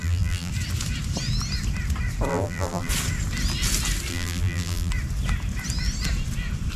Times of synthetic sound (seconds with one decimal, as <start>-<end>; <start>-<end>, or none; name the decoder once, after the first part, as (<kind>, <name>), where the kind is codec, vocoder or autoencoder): 0.0-0.5 (vocoder, BigVGAN v2); 2.3-2.9; 4.1-4.9